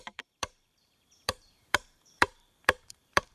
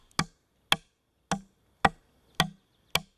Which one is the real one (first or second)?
second